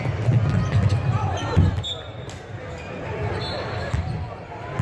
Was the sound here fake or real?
real